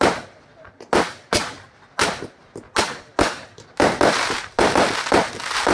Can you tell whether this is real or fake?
real